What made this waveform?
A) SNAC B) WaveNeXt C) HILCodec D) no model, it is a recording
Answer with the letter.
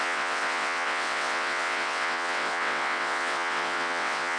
B